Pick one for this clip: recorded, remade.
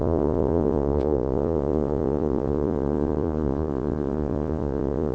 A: remade